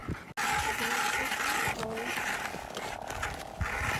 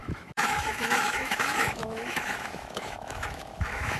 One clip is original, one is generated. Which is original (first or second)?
first